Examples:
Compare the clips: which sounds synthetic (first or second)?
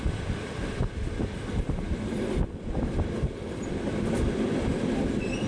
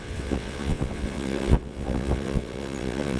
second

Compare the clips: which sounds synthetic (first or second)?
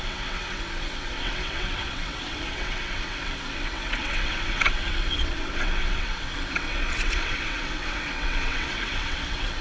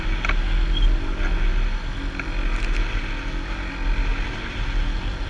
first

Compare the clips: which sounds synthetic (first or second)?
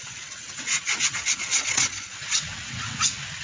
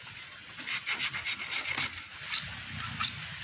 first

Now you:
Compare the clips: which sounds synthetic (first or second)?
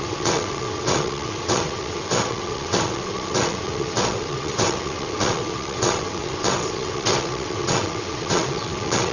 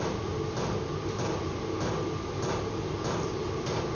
first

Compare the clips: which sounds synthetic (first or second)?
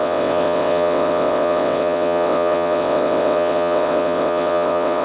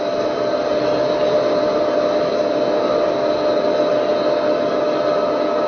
first